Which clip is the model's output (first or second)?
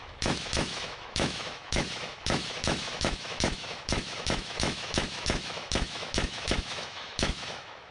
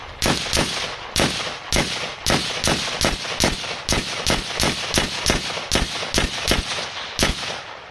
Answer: first